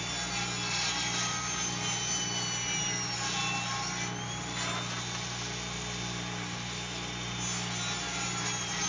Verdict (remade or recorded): recorded